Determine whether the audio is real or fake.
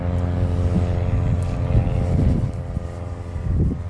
real